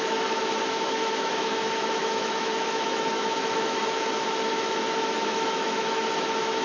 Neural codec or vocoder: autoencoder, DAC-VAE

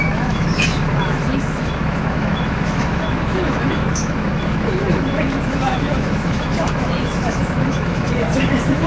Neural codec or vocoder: autoencoder, DAC-VAE